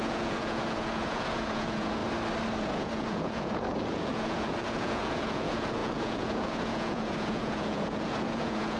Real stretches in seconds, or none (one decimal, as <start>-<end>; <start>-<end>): 2.0-2.6